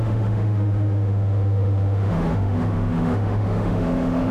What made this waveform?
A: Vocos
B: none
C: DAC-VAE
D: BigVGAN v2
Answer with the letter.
C